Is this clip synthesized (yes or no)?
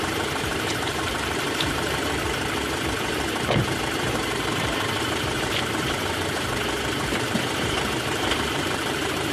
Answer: yes